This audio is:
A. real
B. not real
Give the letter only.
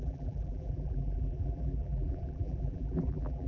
B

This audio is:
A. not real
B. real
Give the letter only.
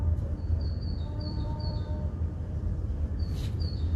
A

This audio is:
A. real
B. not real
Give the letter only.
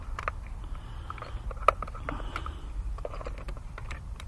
B